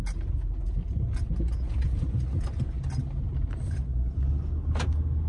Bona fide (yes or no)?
yes